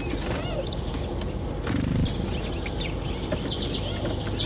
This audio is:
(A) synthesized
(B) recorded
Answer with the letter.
B